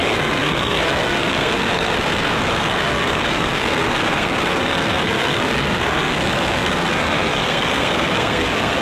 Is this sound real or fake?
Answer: fake